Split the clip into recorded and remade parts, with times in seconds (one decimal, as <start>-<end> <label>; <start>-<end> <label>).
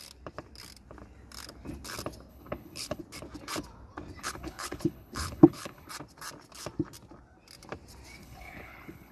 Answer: 0.0-2.3 recorded; 2.3-3.0 remade; 3.0-4.2 recorded; 4.2-5.9 remade; 5.9-8.2 recorded; 8.2-9.1 remade